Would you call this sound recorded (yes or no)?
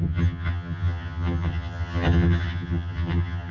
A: no